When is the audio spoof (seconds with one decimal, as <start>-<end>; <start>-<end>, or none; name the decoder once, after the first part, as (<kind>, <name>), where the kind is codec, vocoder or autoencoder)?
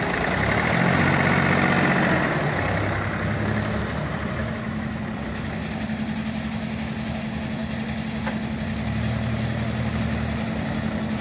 4.4-5.0 (autoencoder, DAC-VAE)